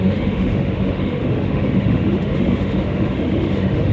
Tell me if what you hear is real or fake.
fake